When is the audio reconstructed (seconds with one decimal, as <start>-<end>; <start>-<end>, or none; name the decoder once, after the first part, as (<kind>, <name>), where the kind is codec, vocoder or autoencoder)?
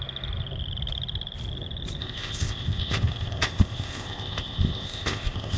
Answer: 2.0-5.6 (codec, ZipCodec)